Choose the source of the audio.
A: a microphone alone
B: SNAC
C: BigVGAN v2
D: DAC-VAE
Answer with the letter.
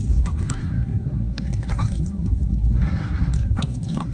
B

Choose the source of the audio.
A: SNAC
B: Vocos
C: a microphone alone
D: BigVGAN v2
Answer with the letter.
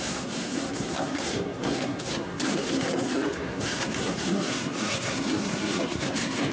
A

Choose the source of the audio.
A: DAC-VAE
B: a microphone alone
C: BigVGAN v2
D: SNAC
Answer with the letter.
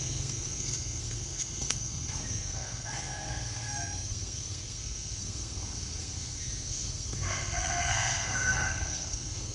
D